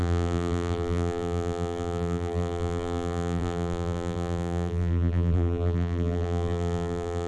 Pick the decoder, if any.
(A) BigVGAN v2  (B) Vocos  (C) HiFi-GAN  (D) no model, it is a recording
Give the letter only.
A